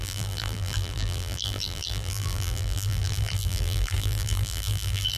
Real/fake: fake